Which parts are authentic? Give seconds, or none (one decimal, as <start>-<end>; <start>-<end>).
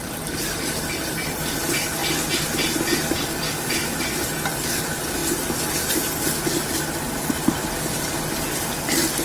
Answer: 2.0-3.3; 4.1-4.8; 5.2-8.6